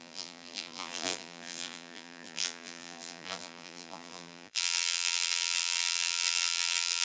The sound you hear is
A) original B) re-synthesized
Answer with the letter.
B